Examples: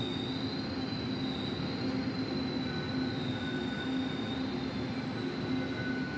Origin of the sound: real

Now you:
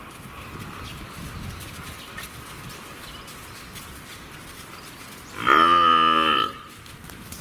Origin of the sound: real